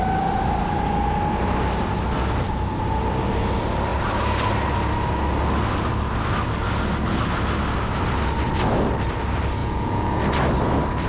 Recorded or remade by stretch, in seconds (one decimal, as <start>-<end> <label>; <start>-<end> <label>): 0.0-9.6 recorded; 9.6-10.2 remade; 10.2-11.1 recorded